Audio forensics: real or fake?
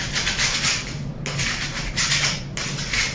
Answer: real